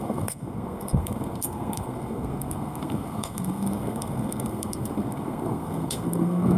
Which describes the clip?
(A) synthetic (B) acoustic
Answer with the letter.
A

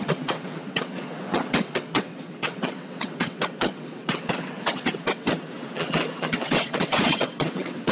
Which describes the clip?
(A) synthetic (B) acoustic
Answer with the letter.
A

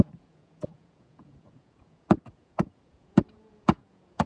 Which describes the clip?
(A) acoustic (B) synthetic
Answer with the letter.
B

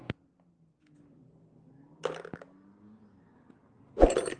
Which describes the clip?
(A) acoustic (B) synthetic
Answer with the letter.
A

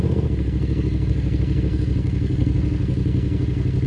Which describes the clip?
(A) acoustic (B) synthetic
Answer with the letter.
B